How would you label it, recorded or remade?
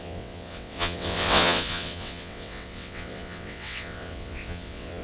remade